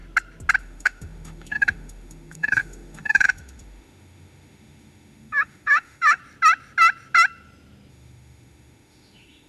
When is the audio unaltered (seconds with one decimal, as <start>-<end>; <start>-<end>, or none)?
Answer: 0.0-0.6; 6.2-7.9